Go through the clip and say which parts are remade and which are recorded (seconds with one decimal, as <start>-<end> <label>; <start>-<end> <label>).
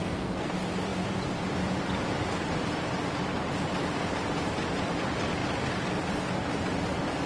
0.0-0.5 remade; 0.5-7.3 recorded